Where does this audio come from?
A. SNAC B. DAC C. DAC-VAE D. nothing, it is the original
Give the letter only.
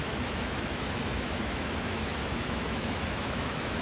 C